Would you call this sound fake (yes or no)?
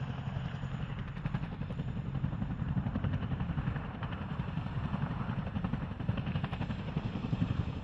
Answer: yes